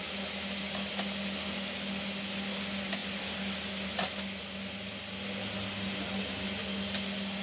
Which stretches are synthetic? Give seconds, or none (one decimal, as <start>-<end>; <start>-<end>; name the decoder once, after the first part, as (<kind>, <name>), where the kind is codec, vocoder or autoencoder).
none